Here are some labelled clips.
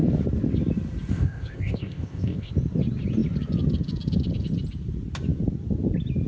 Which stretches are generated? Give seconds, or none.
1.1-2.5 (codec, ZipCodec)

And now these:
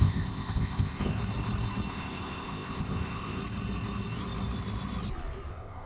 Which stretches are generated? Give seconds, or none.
0.0-1.2 (codec, ZipCodec); 1.9-3.4; 5.5-5.9

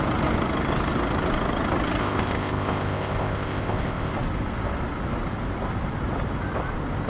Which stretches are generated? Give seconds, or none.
2.0-4.1 (codec, ZipCodec)

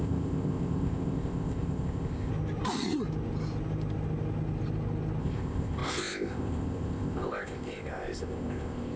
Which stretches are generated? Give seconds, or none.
0.0-2.3 (codec, ZipCodec); 5.2-9.0

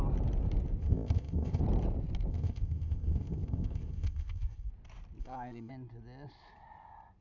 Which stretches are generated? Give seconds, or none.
0.8-1.6 (codec, ZipCodec); 2.3-4.7; 5.2-5.7